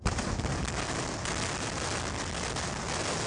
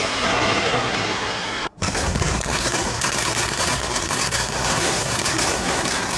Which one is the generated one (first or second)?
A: second